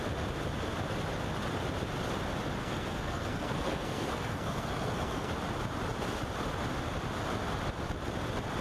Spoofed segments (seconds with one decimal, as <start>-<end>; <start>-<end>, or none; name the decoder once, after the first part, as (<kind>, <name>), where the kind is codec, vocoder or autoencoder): 2.6-5.3 (codec, SNAC)